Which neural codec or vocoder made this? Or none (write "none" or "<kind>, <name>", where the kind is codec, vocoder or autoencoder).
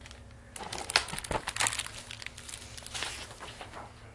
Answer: none